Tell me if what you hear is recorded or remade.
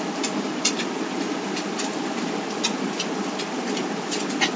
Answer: recorded